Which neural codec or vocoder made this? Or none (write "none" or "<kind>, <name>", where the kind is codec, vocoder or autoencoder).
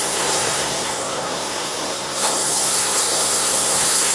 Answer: codec, SNAC